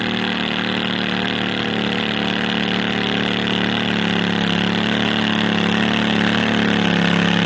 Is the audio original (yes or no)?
yes